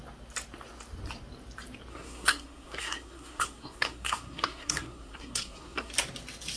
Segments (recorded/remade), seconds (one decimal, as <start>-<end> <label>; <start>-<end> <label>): 0.0-1.9 recorded; 1.9-5.9 remade; 5.9-6.6 recorded